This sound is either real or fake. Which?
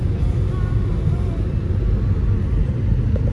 real